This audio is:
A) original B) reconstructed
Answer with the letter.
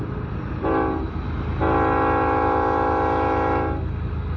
A